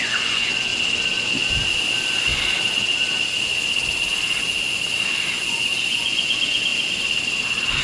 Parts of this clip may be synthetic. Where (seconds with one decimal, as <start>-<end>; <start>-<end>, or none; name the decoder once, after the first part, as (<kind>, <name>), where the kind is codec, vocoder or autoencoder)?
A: 0.0-0.7 (vocoder, Vocos); 5.4-6.7